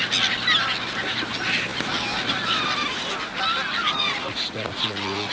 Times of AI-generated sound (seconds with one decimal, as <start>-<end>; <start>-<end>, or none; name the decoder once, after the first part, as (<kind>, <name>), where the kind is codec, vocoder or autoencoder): 3.8-5.3 (vocoder, Vocos)